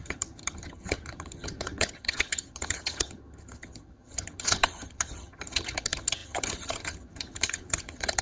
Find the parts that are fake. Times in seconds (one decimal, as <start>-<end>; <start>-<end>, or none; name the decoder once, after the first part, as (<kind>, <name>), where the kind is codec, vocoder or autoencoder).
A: 0.0-8.2 (vocoder, HiFi-GAN)